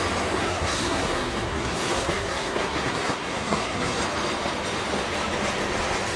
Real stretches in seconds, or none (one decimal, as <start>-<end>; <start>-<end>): 0.0-0.4; 4.0-6.2